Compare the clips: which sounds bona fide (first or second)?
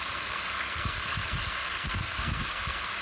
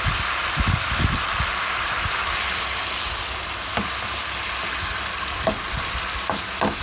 second